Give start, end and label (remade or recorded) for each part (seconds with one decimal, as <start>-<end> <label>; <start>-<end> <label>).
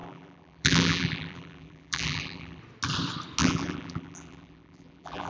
0.0-2.6 remade; 2.6-3.4 recorded; 3.4-5.3 remade